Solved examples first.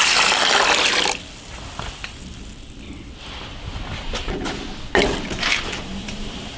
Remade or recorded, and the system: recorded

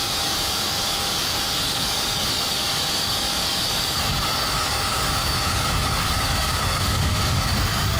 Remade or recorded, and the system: remade, codec, DAC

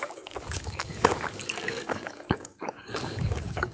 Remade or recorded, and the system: remade, codec, DAC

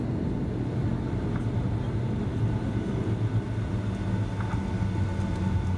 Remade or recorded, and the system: recorded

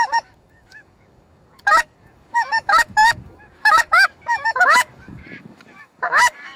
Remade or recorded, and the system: remade, codec, DAC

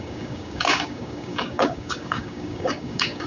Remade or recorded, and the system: remade, codec, DAC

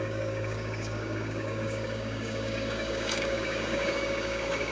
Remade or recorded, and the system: remade, codec, DAC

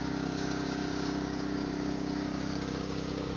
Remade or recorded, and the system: remade, codec, DAC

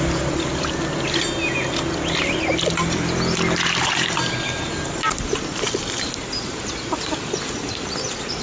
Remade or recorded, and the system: recorded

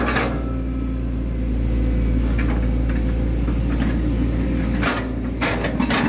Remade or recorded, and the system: recorded